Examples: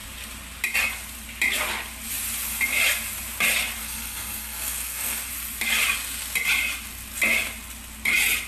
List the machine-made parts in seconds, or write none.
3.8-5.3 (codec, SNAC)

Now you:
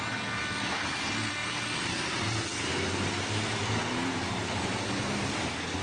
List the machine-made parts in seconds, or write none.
none